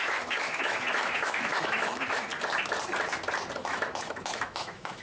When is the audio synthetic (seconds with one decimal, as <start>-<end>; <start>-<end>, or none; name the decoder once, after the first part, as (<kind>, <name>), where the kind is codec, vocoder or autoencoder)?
0.0-2.3 (autoencoder, DAC-VAE); 3.6-5.0